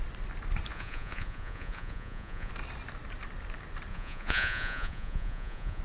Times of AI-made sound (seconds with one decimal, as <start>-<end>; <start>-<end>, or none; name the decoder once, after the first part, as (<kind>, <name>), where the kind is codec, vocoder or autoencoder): 0.7-2.5 (vocoder, Vocos); 3.9-5.8